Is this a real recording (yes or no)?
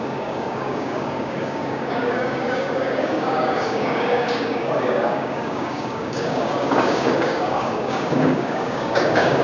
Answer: no